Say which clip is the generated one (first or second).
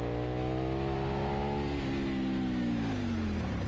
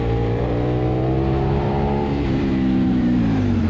second